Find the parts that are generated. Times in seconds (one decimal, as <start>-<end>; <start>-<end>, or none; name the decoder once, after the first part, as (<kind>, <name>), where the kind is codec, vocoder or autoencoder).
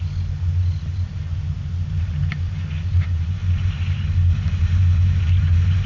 none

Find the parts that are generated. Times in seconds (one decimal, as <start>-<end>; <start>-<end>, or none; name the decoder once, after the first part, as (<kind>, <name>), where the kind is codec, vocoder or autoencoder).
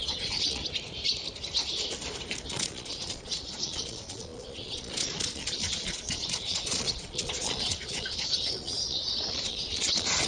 0.0-0.6 (vocoder, Vocos); 2.5-10.3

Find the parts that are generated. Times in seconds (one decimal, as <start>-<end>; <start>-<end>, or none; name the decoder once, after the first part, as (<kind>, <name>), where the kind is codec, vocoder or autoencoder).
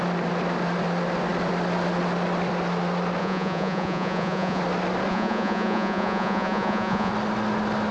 3.2-4.6 (vocoder, Vocos); 5.1-7.1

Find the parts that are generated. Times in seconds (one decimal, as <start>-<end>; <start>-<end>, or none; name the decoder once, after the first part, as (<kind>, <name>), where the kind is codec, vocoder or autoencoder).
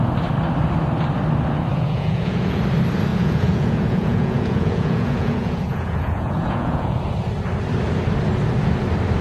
1.7-2.6 (vocoder, Vocos); 3.1-7.0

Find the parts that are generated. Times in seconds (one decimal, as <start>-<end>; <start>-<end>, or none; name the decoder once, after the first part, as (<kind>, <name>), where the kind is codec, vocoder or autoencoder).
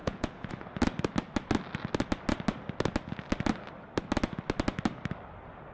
0.0-0.5 (vocoder, Vocos)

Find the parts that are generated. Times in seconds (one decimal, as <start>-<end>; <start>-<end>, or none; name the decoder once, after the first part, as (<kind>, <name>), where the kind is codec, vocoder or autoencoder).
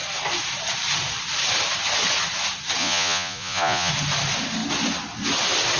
2.8-3.9 (vocoder, Vocos)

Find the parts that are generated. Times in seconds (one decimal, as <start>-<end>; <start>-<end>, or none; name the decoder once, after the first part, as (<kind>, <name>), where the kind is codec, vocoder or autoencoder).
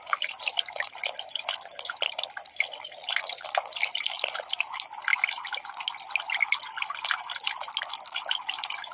none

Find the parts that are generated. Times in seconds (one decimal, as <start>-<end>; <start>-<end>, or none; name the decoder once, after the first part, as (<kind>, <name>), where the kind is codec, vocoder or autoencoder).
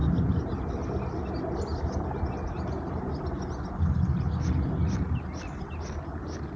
none